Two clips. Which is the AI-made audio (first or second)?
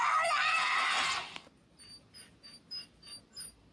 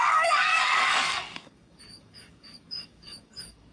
second